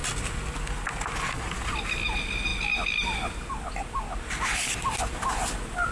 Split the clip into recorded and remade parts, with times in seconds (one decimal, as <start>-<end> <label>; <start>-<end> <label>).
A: 0.0-5.9 recorded

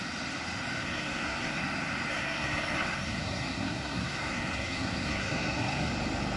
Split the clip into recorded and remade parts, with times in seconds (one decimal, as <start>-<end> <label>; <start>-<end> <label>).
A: 0.0-0.8 recorded; 0.8-1.6 remade; 1.6-2.1 recorded; 2.1-5.9 remade; 5.9-6.4 recorded

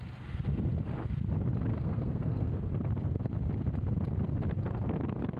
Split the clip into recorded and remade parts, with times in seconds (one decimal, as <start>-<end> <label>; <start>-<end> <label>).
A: 0.0-1.7 recorded; 1.7-2.7 remade; 2.7-5.4 recorded

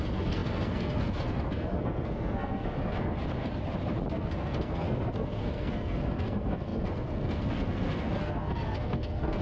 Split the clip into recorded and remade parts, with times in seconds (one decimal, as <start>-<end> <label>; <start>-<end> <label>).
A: 0.0-3.2 remade; 3.2-4.1 recorded; 4.1-9.4 remade

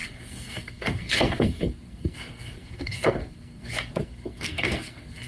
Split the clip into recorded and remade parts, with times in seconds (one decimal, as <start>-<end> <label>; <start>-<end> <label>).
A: 0.0-5.3 remade

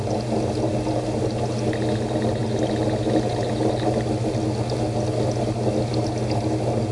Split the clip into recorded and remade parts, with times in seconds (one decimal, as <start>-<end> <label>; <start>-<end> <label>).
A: 0.0-6.9 recorded

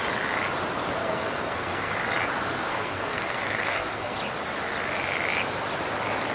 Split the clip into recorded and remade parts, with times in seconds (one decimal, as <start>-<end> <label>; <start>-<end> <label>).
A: 0.0-1.0 recorded; 1.0-1.9 remade; 1.9-2.7 recorded; 2.7-4.2 remade; 4.2-6.3 recorded